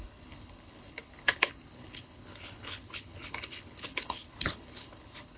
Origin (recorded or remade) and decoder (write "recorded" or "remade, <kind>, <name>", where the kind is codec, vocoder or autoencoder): remade, codec, HILCodec